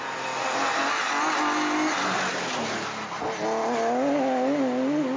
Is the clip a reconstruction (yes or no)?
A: no